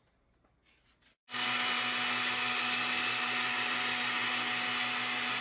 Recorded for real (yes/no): yes